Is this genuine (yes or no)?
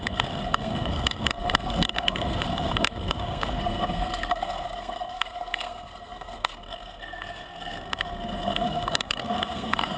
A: no